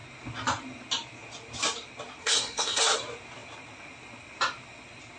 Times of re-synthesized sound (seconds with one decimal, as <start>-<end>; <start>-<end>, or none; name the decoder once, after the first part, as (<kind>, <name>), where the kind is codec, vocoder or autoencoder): 2.2-2.8 (codec, SNAC)